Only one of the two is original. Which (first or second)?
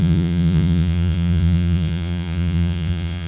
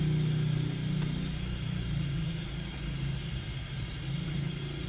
second